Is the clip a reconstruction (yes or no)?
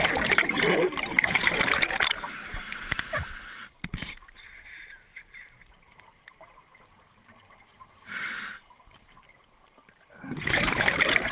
yes